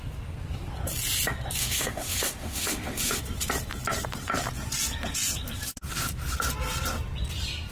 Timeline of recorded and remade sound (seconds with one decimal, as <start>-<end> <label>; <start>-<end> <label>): 0.0-1.6 recorded; 1.6-3.2 remade; 3.2-7.7 recorded